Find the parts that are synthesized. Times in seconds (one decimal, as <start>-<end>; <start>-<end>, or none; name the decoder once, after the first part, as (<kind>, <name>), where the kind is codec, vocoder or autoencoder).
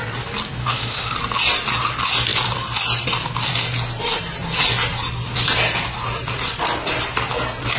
0.6-1.1 (autoencoder, DAC-VAE)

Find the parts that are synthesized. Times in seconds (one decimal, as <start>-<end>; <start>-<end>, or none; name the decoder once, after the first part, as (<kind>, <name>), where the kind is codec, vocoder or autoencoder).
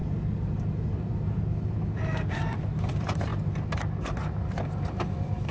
2.1-3.3 (vocoder, BigVGAN v2); 4.8-5.5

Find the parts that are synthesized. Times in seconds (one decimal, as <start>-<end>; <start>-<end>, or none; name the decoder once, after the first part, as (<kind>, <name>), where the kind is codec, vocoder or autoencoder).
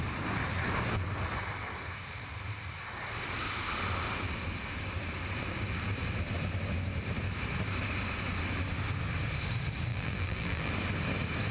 9.9-10.7 (vocoder, BigVGAN v2)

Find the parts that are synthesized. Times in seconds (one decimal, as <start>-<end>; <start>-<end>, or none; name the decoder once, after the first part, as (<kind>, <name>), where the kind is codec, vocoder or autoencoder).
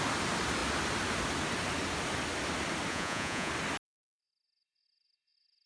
2.9-3.5 (vocoder, Vocos)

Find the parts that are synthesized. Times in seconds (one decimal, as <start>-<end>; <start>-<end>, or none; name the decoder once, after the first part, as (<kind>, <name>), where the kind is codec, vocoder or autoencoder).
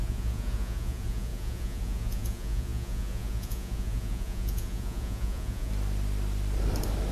0.0-5.7 (vocoder, Vocos)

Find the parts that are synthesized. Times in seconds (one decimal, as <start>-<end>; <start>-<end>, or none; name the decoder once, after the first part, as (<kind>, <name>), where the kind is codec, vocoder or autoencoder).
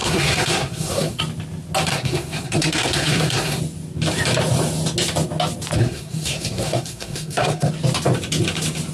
0.0-1.2 (codec, SNAC); 1.9-3.6; 5.8-7.7